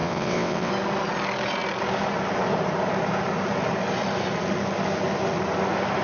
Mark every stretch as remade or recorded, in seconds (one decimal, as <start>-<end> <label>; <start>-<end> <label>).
0.0-0.7 remade; 0.7-6.0 recorded